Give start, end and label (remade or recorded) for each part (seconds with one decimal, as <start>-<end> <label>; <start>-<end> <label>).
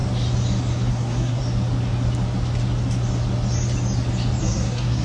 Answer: 0.0-0.9 recorded; 0.9-1.4 remade; 1.4-4.4 recorded; 4.4-5.0 remade